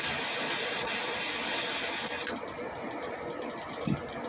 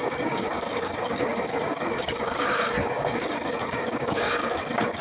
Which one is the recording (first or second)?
first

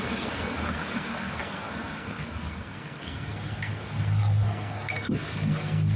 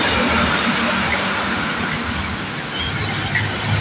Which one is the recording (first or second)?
second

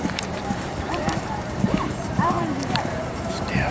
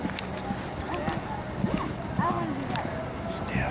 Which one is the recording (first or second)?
second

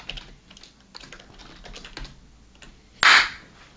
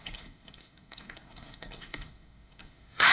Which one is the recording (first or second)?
first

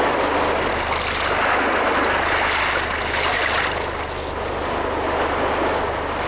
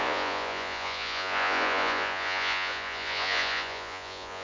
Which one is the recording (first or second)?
first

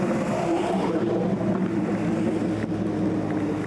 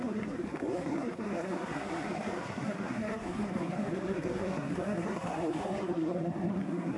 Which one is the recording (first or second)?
first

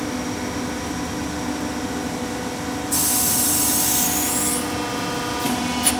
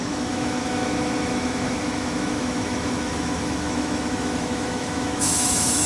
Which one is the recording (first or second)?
first